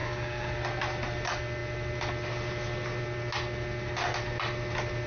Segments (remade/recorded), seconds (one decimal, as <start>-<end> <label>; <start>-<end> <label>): 0.0-0.5 remade; 0.5-5.1 recorded